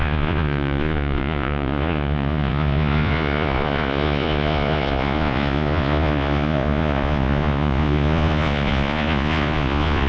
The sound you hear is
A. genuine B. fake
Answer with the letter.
B